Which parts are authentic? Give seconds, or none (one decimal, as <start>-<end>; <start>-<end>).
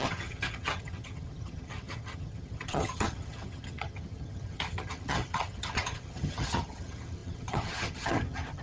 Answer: none